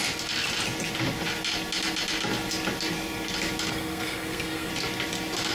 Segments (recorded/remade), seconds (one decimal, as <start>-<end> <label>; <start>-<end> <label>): 0.0-3.7 recorded; 3.7-4.7 remade; 4.7-5.5 recorded